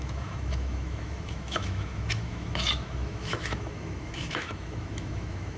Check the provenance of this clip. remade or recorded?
remade